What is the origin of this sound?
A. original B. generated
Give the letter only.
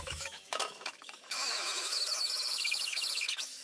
B